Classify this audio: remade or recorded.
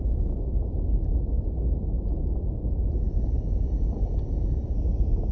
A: recorded